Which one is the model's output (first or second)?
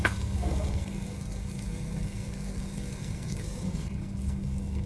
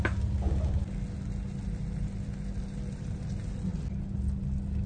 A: first